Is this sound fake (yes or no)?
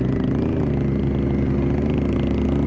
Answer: no